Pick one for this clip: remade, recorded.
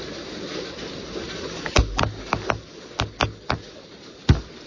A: recorded